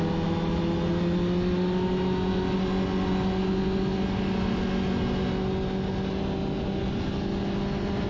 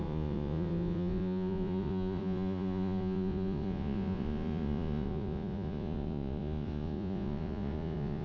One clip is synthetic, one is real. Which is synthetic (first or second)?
second